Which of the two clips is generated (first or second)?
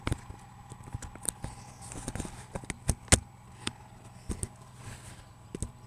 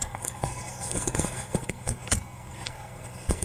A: second